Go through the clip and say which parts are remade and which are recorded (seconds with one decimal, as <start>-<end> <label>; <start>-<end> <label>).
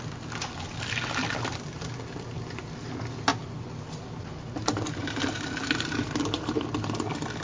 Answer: 0.0-5.0 recorded; 5.0-6.6 remade; 6.6-7.4 recorded